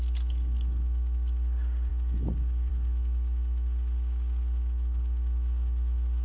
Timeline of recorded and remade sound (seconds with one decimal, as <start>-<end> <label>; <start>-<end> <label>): 0.0-6.2 recorded

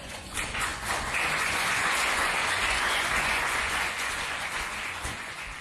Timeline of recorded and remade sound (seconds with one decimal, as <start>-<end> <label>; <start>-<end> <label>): 0.0-5.6 remade

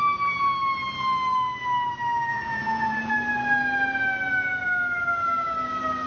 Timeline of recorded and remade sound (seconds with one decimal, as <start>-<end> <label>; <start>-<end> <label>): 0.0-2.3 recorded; 2.3-3.1 remade; 3.1-6.1 recorded

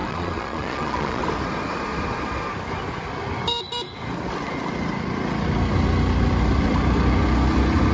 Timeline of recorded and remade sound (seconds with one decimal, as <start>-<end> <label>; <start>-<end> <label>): 0.0-1.2 remade; 1.2-7.9 recorded

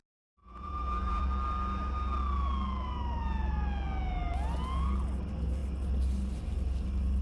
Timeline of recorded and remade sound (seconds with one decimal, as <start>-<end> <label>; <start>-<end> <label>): 0.0-0.4 recorded; 0.4-1.2 remade; 1.2-7.2 recorded

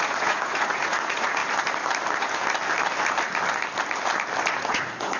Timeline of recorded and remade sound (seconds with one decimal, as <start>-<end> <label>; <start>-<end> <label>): 0.0-1.4 remade; 1.4-4.5 recorded; 4.5-5.2 remade

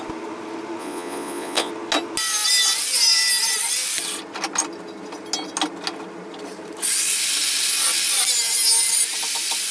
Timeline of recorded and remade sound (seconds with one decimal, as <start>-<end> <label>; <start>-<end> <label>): 0.0-0.8 recorded; 0.8-1.7 remade; 1.7-9.7 recorded